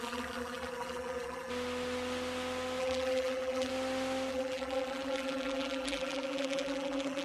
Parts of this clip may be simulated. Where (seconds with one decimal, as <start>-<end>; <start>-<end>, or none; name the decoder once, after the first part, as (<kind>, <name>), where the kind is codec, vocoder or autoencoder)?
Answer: 0.0-1.5 (vocoder, BigVGAN v2); 2.8-3.7; 4.3-7.2